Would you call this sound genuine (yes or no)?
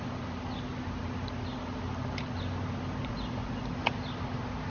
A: yes